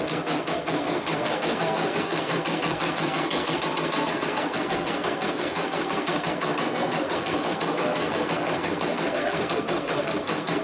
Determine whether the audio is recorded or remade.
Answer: remade